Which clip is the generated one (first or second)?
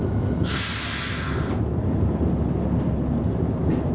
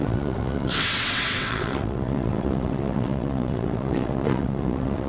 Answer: second